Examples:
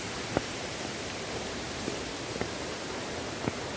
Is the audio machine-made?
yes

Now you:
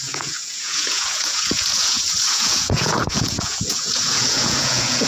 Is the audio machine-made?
yes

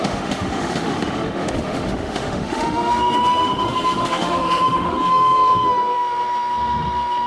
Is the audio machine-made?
yes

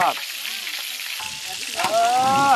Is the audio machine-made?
no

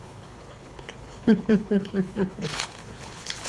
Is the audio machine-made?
yes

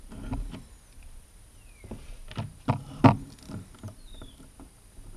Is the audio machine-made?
no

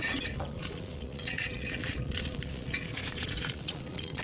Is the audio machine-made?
yes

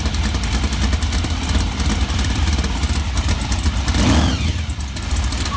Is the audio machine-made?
yes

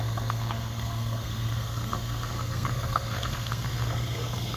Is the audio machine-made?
yes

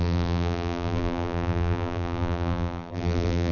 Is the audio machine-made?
yes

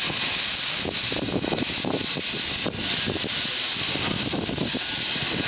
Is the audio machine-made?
no